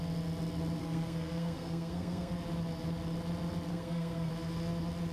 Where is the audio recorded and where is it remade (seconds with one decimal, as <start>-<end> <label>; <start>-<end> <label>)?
0.0-0.8 recorded; 0.8-2.3 remade; 2.3-3.7 recorded; 3.7-4.3 remade; 4.3-5.1 recorded